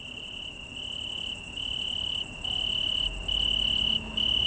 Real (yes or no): yes